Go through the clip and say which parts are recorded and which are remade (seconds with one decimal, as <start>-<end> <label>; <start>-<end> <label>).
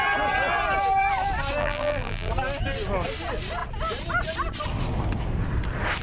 0.0-1.6 recorded; 1.6-2.3 remade; 2.3-6.0 recorded